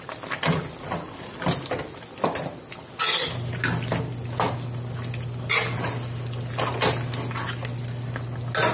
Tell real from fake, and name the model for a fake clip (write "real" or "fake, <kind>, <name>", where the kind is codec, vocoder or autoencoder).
real